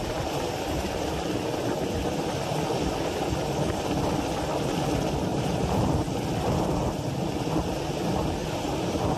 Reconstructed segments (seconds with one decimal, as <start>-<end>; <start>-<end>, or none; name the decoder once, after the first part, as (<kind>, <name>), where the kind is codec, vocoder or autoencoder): 5.3-6.1 (vocoder, BigVGAN v2)